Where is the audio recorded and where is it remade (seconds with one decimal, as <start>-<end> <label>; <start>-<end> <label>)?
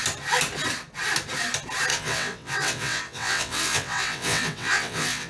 0.0-1.9 recorded; 1.9-5.3 remade